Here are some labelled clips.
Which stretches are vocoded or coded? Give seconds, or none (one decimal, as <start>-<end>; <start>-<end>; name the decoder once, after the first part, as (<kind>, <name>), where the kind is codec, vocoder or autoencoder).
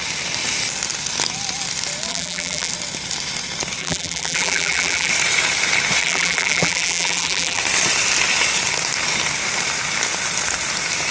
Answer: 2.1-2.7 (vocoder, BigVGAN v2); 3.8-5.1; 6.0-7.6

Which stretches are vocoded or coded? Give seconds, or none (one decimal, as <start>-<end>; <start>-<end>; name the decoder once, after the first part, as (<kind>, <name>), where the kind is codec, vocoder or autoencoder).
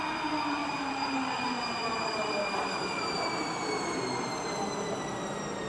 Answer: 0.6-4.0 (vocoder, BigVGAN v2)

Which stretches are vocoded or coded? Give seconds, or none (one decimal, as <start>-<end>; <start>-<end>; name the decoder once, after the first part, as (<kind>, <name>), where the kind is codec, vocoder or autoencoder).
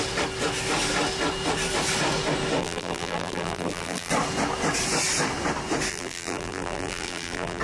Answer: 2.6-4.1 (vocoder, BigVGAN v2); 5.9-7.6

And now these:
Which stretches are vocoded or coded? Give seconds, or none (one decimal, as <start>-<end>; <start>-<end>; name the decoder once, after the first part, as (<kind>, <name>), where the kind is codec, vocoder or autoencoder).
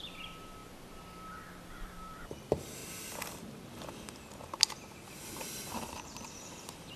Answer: 0.0-0.6 (vocoder, BigVGAN v2); 1.7-2.8; 5.4-7.0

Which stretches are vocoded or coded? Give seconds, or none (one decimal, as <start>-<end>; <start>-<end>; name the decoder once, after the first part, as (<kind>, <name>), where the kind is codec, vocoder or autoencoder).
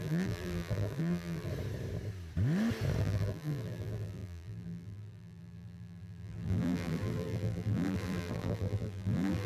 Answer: 0.0-1.5 (vocoder, BigVGAN v2); 3.0-9.5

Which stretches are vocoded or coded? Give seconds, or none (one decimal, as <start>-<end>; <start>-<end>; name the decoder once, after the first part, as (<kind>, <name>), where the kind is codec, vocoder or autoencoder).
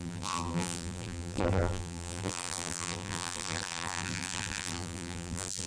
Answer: 0.0-5.7 (vocoder, BigVGAN v2)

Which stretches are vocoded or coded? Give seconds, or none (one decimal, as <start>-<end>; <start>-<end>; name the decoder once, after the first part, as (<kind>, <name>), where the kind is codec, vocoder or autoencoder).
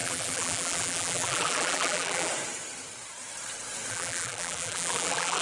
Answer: 0.0-2.3 (vocoder, BigVGAN v2); 3.9-5.4